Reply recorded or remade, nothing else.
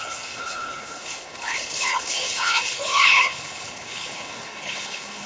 remade